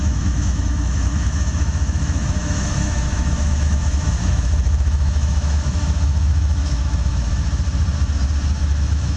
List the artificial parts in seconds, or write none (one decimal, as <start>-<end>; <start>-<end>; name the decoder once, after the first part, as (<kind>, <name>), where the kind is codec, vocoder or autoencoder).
0.0-7.3 (autoencoder, DAC-VAE); 8.6-9.2